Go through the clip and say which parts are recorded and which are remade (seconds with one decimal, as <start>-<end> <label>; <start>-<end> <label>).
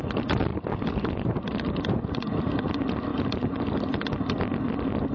0.0-0.5 recorded; 0.5-2.5 remade; 2.5-3.1 recorded; 3.1-3.6 remade; 3.6-5.1 recorded